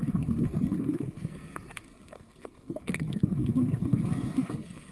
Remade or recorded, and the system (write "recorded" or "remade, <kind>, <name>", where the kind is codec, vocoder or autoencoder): remade, codec, SNAC